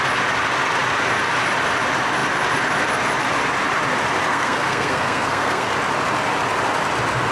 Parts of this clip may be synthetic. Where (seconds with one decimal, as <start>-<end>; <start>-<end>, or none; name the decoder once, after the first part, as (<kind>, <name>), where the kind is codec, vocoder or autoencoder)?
4.3-5.7 (codec, SNAC)